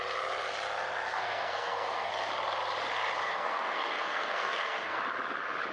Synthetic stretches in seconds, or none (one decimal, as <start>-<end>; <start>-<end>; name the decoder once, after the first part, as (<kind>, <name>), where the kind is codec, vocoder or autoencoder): 1.1-2.1 (codec, SNAC); 3.2-5.0